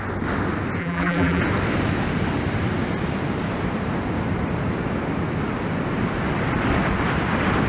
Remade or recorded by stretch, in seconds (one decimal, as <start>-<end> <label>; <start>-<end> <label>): 0.0-0.8 recorded; 0.8-1.4 remade; 1.4-7.7 recorded